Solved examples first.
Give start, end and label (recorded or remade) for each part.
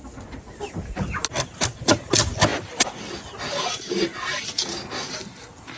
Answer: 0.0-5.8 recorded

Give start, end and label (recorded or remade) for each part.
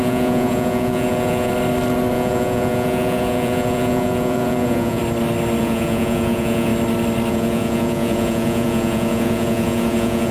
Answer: 0.0-1.5 remade; 1.5-2.1 recorded; 2.1-5.0 remade; 5.0-5.6 recorded; 5.6-6.7 remade; 6.7-7.3 recorded; 7.3-10.3 remade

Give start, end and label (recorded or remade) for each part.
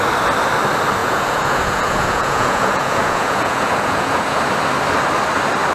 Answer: 0.0-1.0 recorded; 1.0-4.4 remade; 4.4-5.7 recorded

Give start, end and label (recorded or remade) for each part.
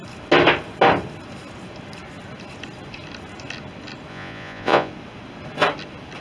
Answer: 0.0-4.1 recorded; 4.1-4.9 remade; 4.9-6.2 recorded